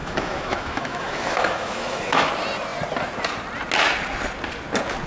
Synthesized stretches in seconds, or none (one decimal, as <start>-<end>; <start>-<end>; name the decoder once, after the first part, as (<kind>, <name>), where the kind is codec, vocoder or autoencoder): 0.0-2.3 (autoencoder, DAC-VAE)